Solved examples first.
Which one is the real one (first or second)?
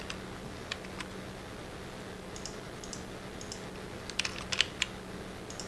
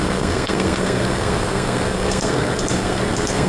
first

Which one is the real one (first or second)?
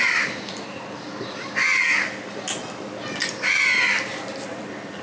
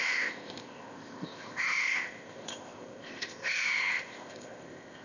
first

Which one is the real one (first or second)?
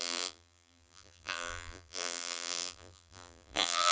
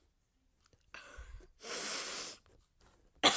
second